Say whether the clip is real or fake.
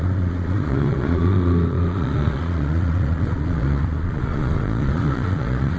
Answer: fake